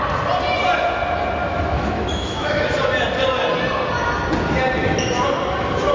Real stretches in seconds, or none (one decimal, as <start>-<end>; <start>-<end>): 0.0-1.4; 2.6-5.9